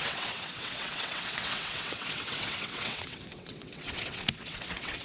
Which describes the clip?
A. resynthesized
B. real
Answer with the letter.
A